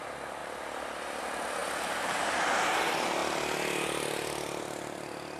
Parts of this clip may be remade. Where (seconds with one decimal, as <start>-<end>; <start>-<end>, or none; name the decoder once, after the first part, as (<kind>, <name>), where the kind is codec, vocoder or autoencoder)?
0.4-1.2 (vocoder, BigVGAN v2); 3.2-4.6